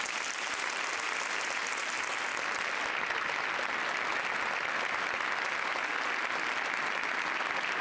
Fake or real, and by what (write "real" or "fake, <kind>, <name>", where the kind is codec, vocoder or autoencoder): real